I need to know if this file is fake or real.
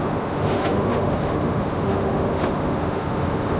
fake